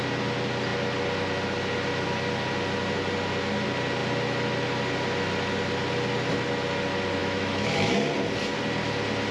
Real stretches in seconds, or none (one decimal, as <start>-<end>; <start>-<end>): 0.0-7.2; 7.9-9.3